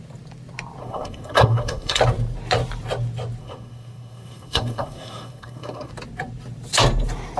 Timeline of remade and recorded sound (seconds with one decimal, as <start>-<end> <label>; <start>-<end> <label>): 0.0-0.8 recorded; 0.8-2.0 remade; 2.0-3.4 recorded; 3.4-5.9 remade; 5.9-7.4 recorded